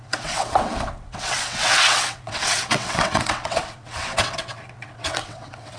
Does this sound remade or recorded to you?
remade